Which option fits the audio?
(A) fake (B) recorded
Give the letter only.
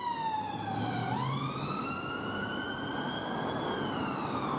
B